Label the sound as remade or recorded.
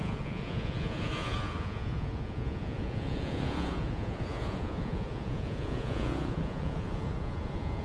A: remade